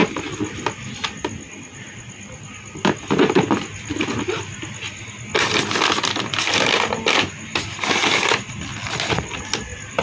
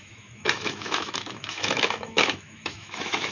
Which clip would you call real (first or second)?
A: first